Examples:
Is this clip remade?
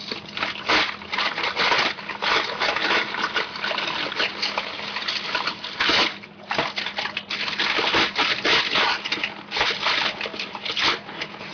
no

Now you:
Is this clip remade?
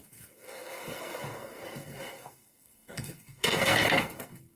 yes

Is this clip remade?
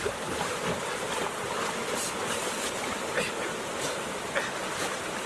no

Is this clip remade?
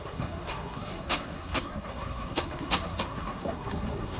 yes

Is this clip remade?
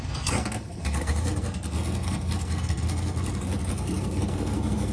yes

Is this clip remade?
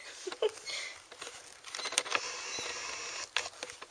no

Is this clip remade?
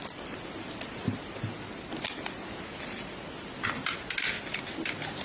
no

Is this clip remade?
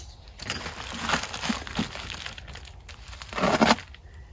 no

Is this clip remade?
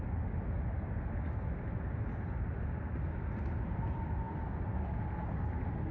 no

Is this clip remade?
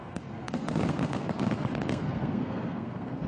yes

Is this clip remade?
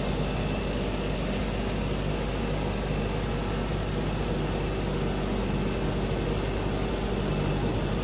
no